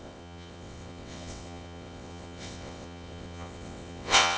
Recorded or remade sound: remade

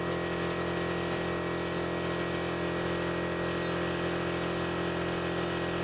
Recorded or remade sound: recorded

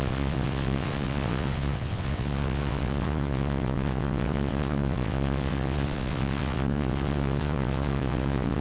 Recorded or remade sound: remade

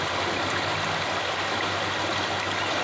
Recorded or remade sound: recorded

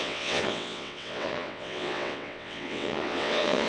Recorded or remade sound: remade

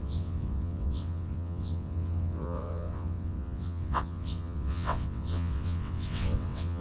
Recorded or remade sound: remade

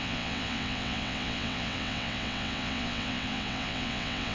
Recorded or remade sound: remade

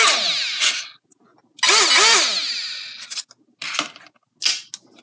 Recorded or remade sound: recorded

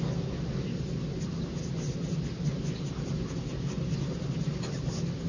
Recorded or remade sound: recorded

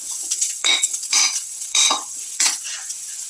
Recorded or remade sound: remade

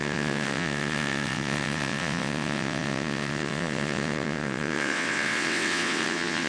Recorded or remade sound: remade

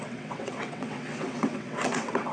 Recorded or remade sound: remade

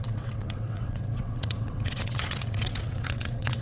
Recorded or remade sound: remade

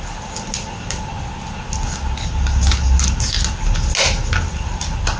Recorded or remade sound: recorded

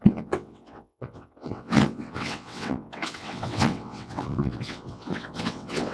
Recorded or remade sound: remade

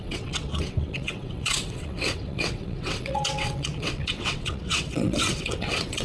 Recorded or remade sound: remade